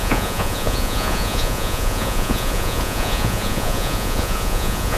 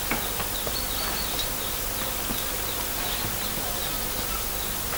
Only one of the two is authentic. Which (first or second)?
second